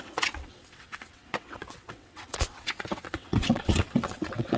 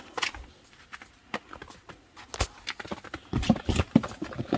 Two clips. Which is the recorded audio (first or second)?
second